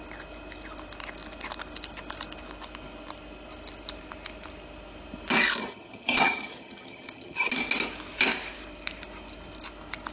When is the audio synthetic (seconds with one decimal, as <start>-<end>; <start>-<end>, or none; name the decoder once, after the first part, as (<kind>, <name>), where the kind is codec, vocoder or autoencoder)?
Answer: 5.6-7.5 (vocoder, HiFi-GAN)